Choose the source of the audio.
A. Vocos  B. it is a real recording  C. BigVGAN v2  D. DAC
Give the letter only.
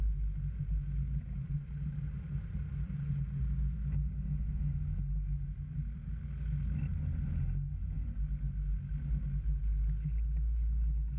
B